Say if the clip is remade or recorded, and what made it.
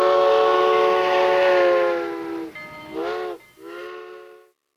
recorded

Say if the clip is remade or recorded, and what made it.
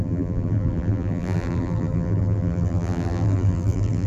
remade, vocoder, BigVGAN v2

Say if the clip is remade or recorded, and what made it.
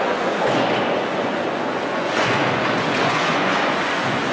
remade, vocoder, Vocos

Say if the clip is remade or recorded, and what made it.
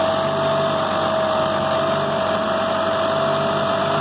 recorded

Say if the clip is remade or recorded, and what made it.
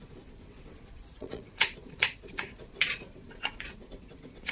remade, vocoder, Vocos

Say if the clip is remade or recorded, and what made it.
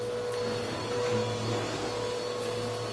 recorded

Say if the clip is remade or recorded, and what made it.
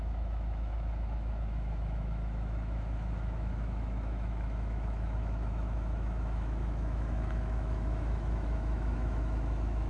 remade, autoencoder, DAC-VAE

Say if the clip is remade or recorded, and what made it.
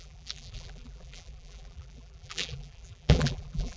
remade, vocoder, BigVGAN v2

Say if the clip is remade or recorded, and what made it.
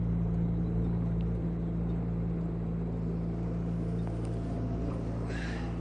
recorded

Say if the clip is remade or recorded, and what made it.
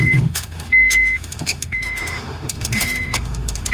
remade, autoencoder, DAC-VAE